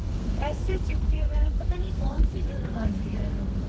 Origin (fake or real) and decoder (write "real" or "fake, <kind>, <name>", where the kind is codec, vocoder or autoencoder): fake, codec, SNAC